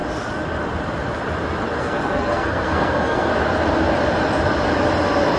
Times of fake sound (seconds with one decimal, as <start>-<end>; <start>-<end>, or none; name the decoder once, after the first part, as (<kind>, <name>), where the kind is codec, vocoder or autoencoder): 1.8-3.3 (codec, SNAC)